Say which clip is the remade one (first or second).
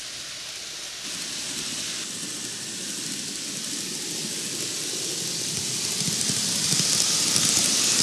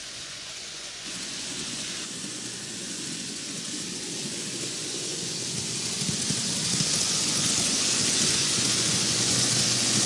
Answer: second